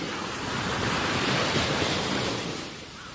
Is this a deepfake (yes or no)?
yes